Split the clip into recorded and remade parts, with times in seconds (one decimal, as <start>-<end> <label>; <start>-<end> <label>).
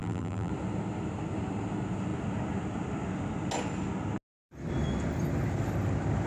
0.0-0.5 remade; 0.5-6.3 recorded